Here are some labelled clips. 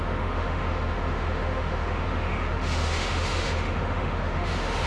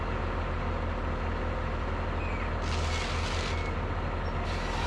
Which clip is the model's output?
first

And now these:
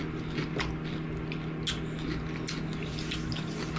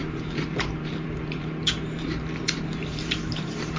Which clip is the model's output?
second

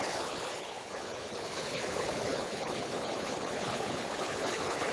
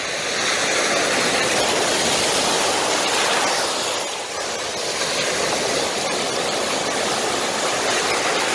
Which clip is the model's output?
first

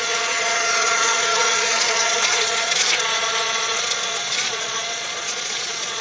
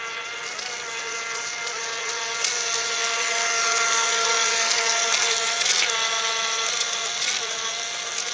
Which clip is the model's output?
first